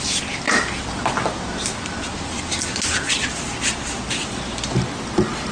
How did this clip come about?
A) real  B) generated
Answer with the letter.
A